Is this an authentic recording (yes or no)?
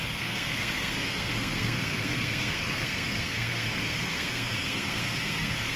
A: no